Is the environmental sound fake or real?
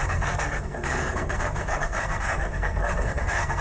fake